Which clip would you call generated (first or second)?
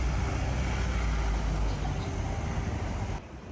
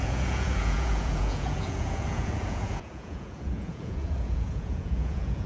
second